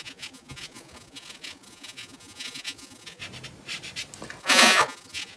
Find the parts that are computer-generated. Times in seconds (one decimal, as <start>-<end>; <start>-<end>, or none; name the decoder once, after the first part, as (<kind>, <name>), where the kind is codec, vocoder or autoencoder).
0.0-3.2 (vocoder, Vocos); 4.4-5.4

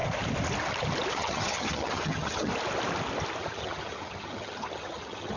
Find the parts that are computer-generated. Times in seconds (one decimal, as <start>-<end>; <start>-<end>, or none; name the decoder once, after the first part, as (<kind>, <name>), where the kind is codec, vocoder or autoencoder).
1.1-2.5 (vocoder, HiFi-GAN); 3.4-5.4

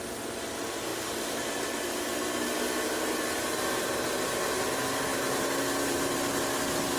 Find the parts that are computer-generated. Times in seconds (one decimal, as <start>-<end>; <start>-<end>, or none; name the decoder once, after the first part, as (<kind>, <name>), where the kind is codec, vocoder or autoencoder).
none

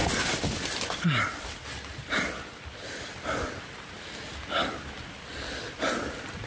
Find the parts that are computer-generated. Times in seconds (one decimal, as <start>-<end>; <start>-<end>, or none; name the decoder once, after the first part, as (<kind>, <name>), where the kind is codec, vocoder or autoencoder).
none